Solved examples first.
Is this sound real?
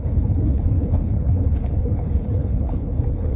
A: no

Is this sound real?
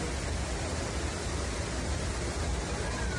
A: yes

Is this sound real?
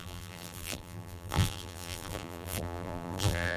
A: no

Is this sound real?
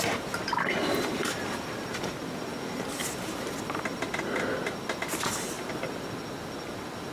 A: yes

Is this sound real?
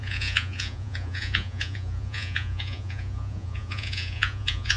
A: no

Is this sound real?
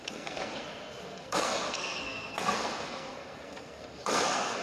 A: no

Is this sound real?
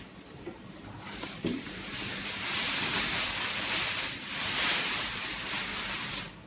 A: no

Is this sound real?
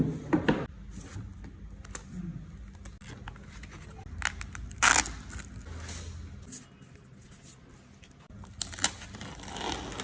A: yes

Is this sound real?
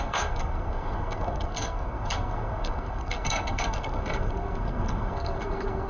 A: no